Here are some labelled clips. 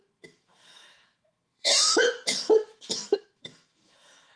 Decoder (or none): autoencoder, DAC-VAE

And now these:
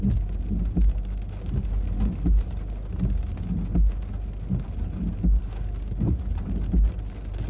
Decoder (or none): none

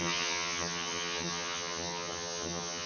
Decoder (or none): vocoder, HiFi-GAN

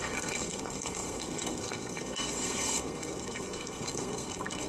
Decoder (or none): codec, SNAC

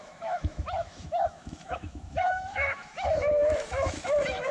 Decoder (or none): autoencoder, DAC-VAE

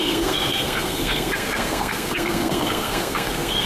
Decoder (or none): codec, SNAC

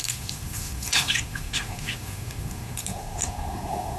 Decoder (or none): codec, SNAC